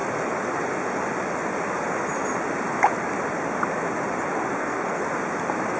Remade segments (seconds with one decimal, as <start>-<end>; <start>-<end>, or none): 4.5-5.0